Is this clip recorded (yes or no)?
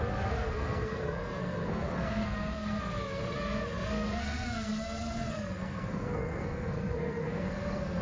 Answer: no